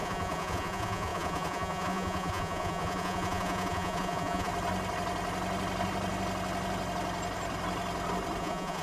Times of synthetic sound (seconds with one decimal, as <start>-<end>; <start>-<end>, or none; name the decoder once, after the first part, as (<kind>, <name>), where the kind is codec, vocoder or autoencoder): 0.0-4.5 (vocoder, Vocos); 8.4-8.8

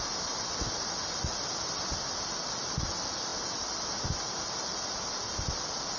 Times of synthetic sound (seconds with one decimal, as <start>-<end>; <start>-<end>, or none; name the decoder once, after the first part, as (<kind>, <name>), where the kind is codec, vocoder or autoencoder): none

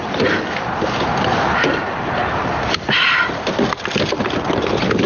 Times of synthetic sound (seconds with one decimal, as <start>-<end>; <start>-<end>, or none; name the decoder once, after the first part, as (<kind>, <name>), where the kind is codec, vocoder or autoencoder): none

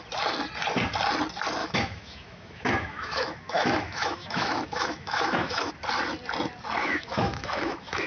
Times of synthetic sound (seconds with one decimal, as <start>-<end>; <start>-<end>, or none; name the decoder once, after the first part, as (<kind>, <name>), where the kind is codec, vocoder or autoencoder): 1.6-5.7 (autoencoder, DAC-VAE); 6.8-8.1

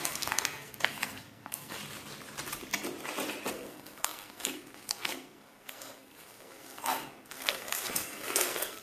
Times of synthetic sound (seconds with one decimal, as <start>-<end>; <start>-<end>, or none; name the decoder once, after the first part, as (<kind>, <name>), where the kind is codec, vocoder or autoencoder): 0.0-1.8 (codec, SNAC); 3.5-8.8